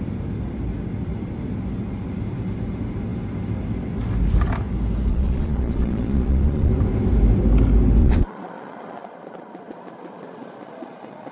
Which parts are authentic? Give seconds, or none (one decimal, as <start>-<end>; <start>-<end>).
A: 0.0-5.1; 6.7-8.0